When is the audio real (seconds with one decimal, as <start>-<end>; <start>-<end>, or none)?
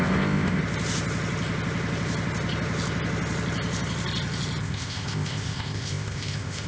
0.6-4.6